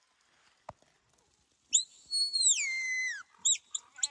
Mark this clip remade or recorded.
recorded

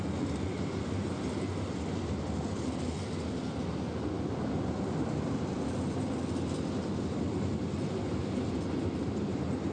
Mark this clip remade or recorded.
recorded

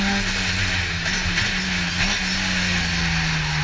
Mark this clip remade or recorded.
recorded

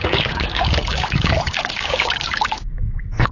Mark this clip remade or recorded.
remade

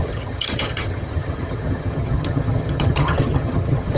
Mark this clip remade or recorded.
remade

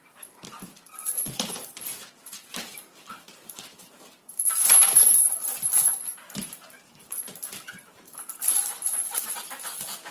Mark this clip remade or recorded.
remade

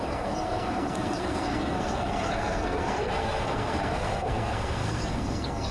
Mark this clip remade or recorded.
remade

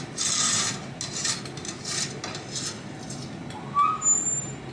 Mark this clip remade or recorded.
recorded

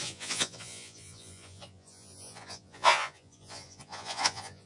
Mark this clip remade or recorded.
remade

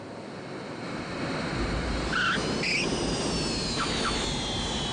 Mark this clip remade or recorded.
recorded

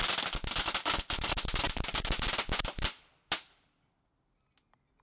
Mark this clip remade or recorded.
recorded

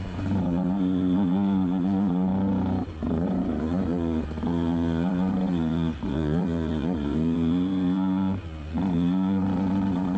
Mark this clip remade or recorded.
remade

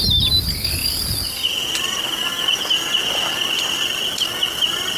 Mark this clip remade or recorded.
recorded